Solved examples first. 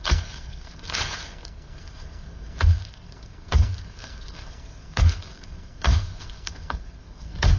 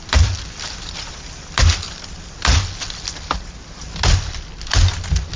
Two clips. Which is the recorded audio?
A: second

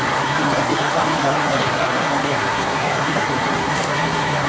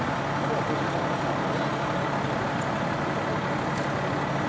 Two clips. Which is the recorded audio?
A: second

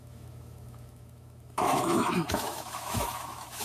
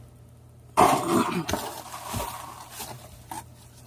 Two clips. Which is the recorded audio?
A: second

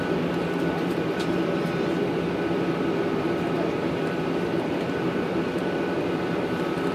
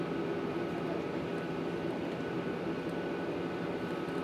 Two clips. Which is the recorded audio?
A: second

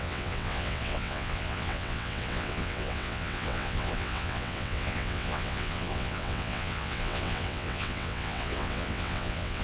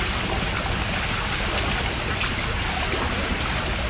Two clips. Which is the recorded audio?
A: second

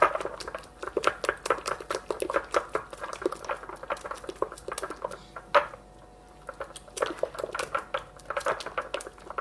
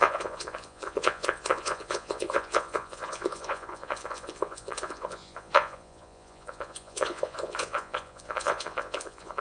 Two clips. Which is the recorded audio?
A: first